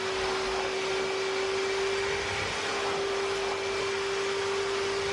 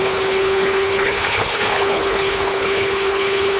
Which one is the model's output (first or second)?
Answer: second